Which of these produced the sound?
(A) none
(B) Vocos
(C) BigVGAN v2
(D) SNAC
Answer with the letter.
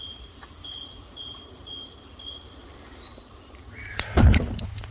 C